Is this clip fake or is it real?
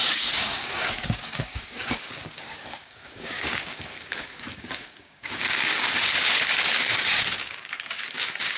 fake